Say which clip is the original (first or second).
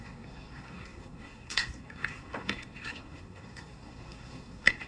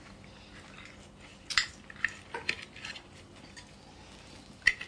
second